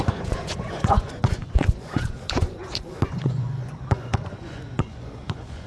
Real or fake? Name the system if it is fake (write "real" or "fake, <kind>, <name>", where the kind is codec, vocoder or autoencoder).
fake, vocoder, Vocos